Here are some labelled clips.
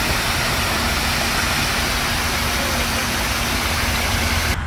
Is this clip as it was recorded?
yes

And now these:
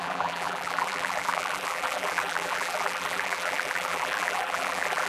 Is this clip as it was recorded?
no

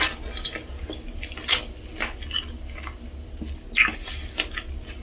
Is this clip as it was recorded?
yes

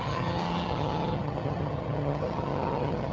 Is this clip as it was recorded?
no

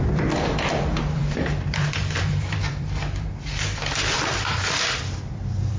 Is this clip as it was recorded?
no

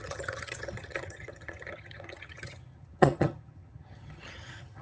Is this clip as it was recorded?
no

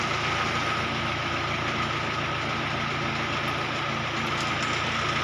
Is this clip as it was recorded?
yes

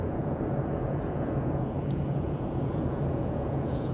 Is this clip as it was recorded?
no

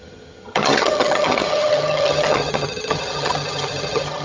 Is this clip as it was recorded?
no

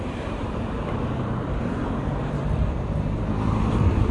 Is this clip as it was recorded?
no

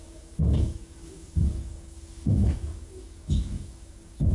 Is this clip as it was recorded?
no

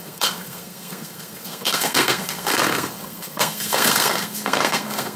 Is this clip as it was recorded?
no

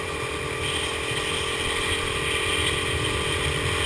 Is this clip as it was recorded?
yes